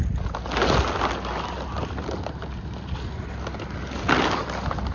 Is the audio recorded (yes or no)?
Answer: yes